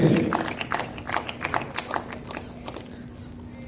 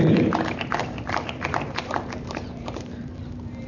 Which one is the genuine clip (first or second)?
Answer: first